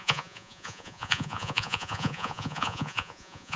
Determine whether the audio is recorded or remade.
remade